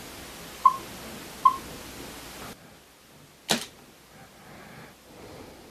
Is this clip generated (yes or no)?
no